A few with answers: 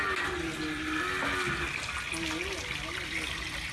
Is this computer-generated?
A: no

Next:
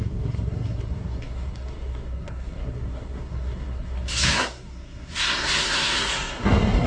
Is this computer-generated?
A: yes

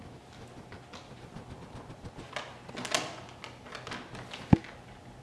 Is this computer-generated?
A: no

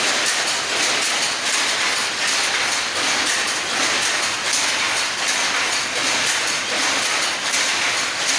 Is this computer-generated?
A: no